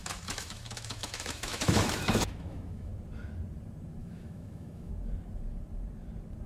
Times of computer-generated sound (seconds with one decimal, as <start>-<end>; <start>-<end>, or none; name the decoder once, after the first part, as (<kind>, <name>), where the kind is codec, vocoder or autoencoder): 0.0-2.9 (autoencoder, DAC-VAE); 4.0-4.9